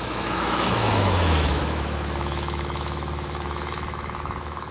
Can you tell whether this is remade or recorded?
remade